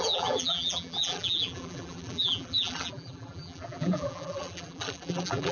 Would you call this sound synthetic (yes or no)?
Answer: yes